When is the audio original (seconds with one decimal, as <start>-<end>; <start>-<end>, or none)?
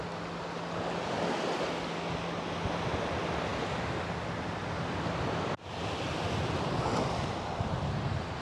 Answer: 0.0-8.4